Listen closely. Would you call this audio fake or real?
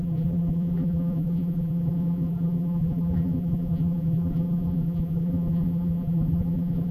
fake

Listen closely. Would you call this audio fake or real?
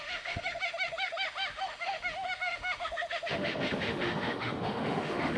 fake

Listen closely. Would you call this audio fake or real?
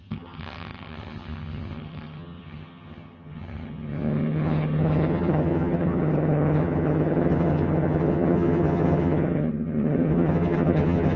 fake